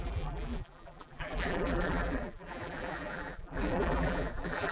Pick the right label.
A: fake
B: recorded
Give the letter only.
A